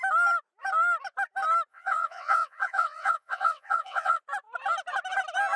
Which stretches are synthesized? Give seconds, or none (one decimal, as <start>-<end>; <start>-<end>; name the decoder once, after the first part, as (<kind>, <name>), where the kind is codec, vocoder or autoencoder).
1.7-4.2 (vocoder, WaveNeXt)